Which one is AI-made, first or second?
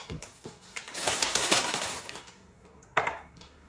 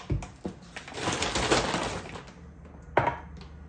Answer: first